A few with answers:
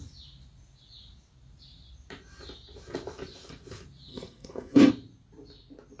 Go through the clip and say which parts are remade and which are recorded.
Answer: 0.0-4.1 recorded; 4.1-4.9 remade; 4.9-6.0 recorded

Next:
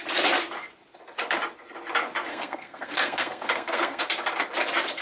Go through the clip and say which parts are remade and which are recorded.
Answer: 0.0-2.3 recorded; 2.3-4.0 remade; 4.0-5.0 recorded

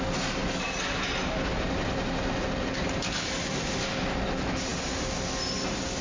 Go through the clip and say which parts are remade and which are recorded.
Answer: 0.0-6.0 recorded

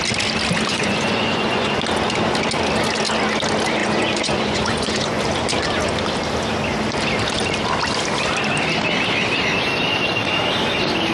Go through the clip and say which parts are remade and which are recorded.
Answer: 0.0-0.7 recorded; 0.7-1.8 remade; 1.8-3.8 recorded; 3.8-5.2 remade; 5.2-11.1 recorded